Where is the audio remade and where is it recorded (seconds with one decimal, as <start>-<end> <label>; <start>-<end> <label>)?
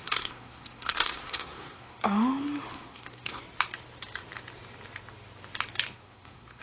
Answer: 0.0-2.0 remade; 2.0-2.7 recorded; 2.7-3.4 remade; 3.4-5.9 recorded; 5.9-6.6 remade